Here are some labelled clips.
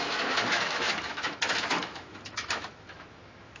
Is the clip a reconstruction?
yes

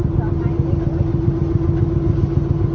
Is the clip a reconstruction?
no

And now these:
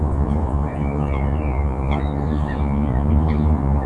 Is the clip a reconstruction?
yes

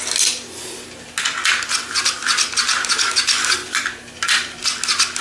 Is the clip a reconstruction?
no